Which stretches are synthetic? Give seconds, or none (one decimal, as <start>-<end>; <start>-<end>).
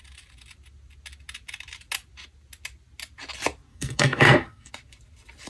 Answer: 3.7-4.7